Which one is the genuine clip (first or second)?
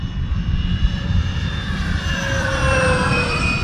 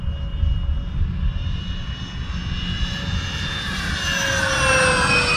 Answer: second